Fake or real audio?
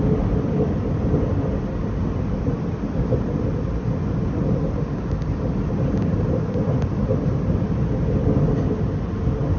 real